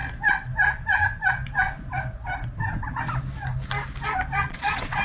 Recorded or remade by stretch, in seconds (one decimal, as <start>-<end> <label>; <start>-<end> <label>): 0.0-4.4 recorded; 4.4-5.0 remade